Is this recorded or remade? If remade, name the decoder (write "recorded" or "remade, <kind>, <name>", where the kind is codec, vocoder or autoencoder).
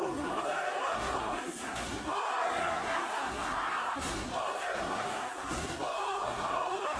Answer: remade, codec, SNAC